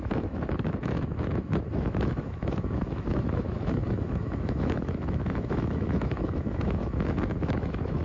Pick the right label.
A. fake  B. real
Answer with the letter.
A